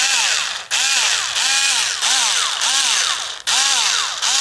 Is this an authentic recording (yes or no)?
yes